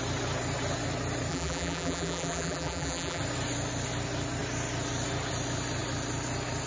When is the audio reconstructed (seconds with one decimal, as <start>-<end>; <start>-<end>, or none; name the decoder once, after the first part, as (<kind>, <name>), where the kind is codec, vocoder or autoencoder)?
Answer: 1.3-3.2 (vocoder, BigVGAN v2)